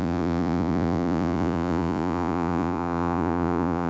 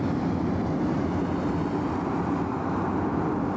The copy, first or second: first